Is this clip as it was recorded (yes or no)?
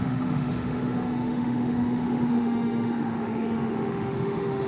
no